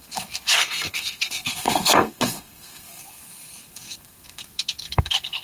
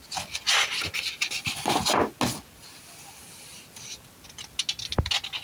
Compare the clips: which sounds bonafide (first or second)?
second